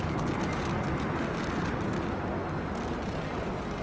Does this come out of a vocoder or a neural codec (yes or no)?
no